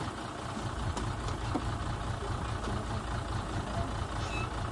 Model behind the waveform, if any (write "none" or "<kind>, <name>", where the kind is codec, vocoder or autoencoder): none